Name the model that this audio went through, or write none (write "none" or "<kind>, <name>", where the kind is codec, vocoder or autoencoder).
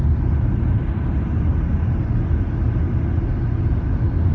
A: none